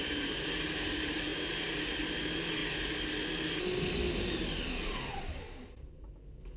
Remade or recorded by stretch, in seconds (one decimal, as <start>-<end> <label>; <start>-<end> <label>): 0.0-2.6 remade; 2.6-5.4 recorded; 5.4-6.6 remade